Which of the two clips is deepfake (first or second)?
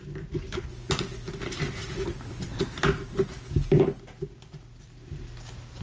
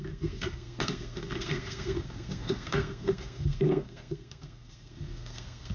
second